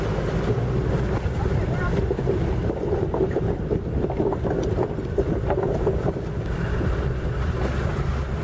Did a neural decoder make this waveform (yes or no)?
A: no